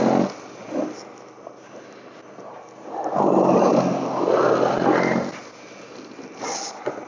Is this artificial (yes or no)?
no